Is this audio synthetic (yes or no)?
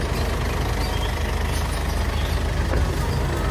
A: no